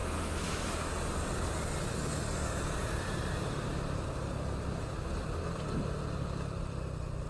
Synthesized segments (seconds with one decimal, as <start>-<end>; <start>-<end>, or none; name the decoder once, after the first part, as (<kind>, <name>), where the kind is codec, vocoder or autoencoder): 0.0-0.9 (autoencoder, DAC-VAE)